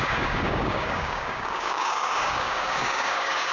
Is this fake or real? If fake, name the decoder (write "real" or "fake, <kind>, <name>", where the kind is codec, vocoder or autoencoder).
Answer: fake, codec, DAC